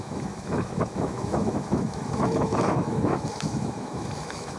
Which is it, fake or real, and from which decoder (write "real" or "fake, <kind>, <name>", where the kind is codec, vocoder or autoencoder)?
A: fake, autoencoder, DAC-VAE